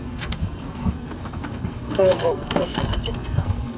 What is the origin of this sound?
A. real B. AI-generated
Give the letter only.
B